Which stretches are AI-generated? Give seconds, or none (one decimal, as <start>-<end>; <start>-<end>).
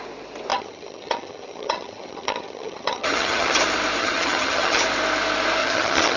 0.5-3.6; 4.0-4.8; 5.6-6.2